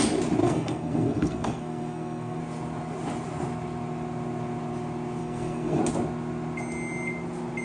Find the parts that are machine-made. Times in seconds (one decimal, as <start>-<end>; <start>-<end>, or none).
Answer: 0.4-2.4; 5.2-5.8